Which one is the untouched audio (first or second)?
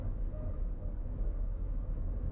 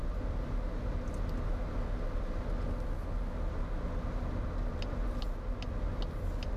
second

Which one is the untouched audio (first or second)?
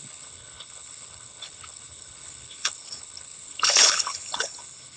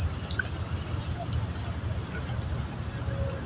second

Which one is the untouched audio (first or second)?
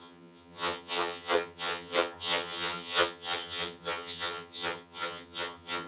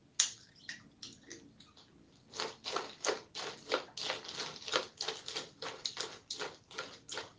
second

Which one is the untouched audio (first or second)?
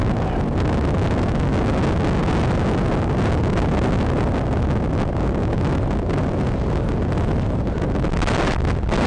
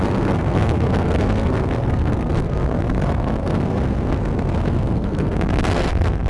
first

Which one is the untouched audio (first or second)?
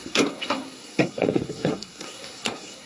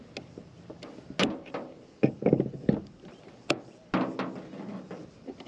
second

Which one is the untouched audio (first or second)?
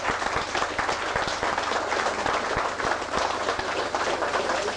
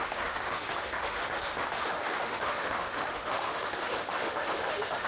first